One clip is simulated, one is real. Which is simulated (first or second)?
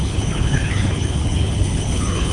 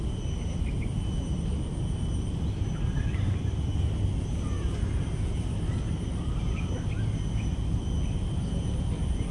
first